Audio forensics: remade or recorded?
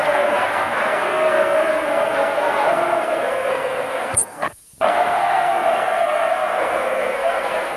remade